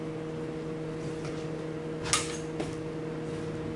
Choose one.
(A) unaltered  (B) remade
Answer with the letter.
A